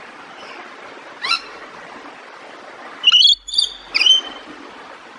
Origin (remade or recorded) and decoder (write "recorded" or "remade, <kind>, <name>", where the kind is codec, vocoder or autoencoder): recorded